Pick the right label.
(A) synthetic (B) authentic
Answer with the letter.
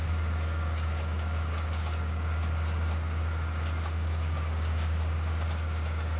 A